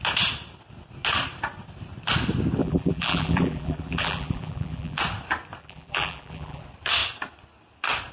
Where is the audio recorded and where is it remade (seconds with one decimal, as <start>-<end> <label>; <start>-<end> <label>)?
0.0-2.6 recorded; 2.6-5.0 remade; 5.0-5.6 recorded; 5.6-6.6 remade; 6.6-8.1 recorded